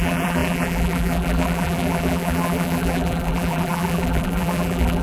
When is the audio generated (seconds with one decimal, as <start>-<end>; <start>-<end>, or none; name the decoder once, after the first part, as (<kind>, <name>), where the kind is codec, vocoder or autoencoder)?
0.0-5.0 (vocoder, BigVGAN v2)